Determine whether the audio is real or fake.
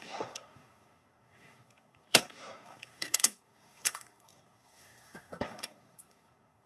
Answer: fake